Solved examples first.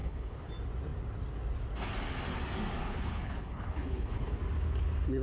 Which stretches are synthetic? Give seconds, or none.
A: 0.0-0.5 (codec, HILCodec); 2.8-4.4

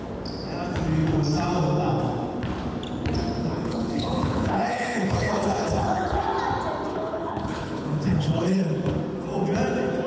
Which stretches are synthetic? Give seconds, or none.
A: 3.4-6.2 (codec, HILCodec); 6.9-9.0

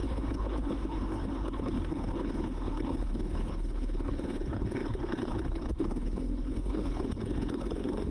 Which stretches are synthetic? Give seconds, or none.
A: 0.0-8.1 (codec, HILCodec)